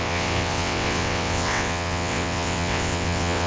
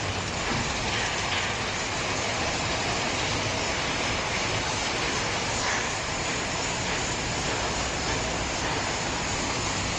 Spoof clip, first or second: first